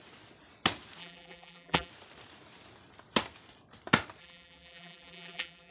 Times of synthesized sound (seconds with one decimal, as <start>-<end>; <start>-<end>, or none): 1.0-1.9; 4.2-5.7

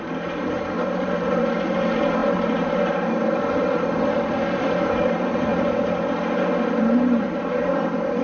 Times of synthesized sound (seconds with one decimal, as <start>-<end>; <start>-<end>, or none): 0.0-5.5; 6.8-8.2